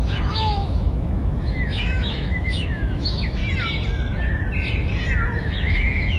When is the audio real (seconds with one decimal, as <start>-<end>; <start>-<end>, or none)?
3.4-5.4